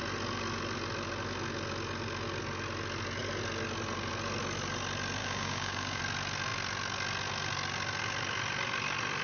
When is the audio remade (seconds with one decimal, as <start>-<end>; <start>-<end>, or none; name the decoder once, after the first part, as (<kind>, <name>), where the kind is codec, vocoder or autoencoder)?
5.2-6.0 (codec, DAC)